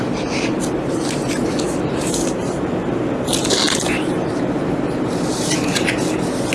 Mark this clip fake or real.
real